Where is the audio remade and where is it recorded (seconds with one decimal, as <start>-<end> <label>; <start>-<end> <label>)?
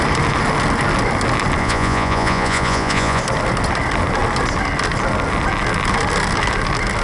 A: 0.0-1.6 recorded; 1.6-3.2 remade; 3.2-7.0 recorded